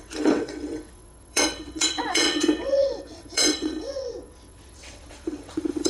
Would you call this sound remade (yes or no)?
yes